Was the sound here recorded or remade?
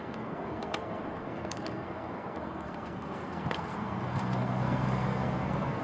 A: remade